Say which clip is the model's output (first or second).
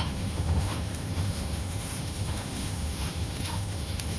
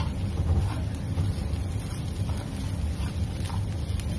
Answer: first